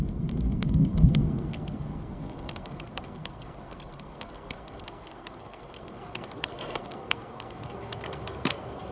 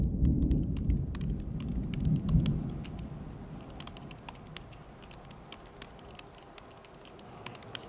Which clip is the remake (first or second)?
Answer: first